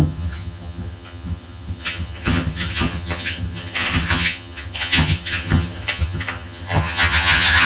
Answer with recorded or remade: remade